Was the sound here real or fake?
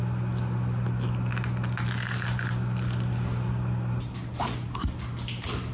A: real